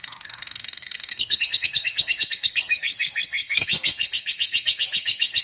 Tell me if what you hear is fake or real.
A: fake